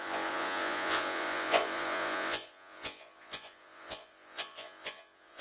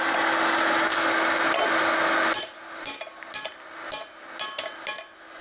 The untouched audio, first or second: second